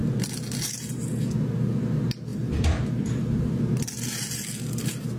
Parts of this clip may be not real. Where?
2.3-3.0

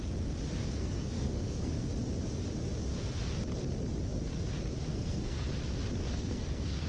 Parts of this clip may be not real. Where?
0.5-1.9; 4.9-5.5; 6.0-6.9

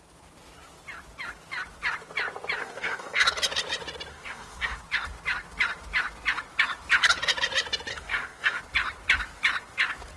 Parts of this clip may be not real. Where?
2.6-3.3; 4.1-4.8; 7.9-8.6

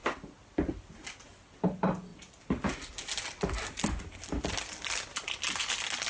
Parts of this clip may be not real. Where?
none

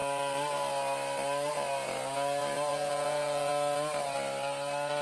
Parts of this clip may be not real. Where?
2.7-3.5

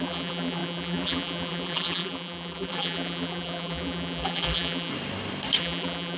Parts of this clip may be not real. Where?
0.0-4.9; 5.6-6.2